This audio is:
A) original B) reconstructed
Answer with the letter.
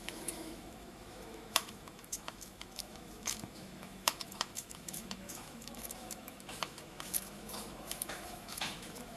B